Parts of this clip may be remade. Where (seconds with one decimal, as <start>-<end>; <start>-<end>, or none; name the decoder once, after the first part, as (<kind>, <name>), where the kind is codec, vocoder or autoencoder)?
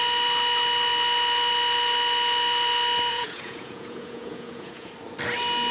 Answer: 3.1-4.9 (vocoder, Vocos)